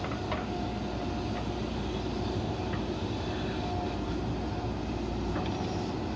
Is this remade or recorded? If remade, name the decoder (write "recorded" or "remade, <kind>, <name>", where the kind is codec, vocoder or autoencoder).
recorded